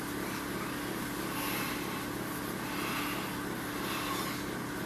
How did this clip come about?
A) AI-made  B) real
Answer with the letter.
B